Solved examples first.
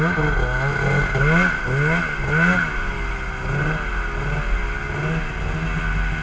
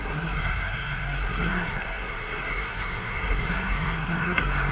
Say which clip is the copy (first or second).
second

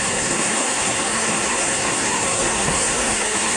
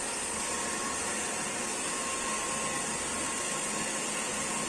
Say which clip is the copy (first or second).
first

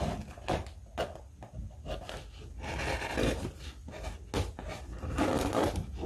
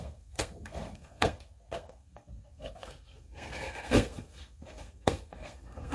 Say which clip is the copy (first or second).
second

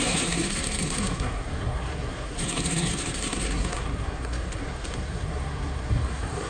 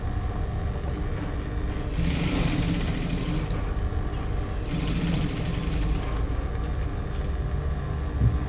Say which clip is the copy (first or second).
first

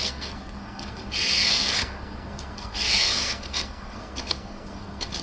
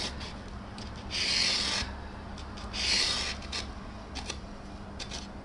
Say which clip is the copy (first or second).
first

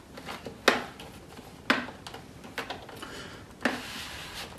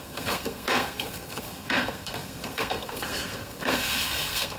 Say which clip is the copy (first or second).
second